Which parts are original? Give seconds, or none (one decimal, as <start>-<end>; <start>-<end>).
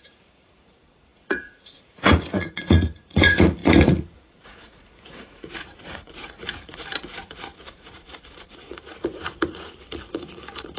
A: none